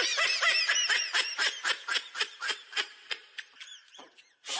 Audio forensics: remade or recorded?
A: remade